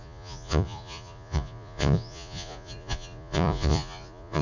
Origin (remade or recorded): remade